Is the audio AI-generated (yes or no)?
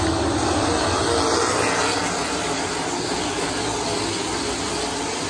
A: no